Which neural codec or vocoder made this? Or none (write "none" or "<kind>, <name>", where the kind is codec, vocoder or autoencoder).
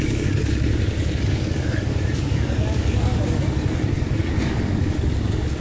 codec, DAC